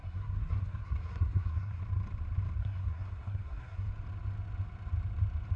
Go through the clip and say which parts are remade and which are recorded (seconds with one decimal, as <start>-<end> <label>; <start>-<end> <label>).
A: 0.0-1.8 remade; 1.8-2.6 recorded; 2.6-3.9 remade; 3.9-5.6 recorded